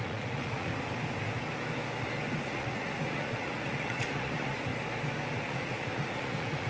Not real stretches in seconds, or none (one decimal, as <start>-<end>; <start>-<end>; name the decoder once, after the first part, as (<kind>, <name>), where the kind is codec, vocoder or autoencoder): 0.0-0.7 (vocoder, Vocos); 2.3-4.7; 5.4-6.7